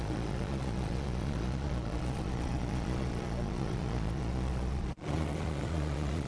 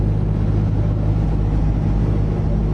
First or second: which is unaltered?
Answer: second